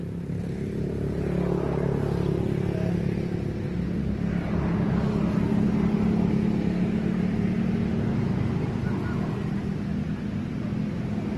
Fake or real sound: real